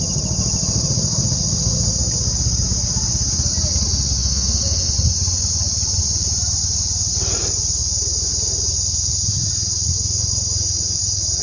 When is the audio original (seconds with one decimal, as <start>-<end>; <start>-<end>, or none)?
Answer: 0.0-4.2; 4.9-11.4

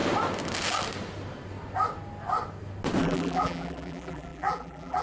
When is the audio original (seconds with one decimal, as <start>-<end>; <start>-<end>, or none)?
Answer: 0.0-3.0

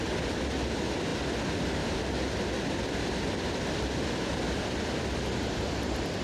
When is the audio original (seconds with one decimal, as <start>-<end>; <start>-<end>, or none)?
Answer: 0.0-6.2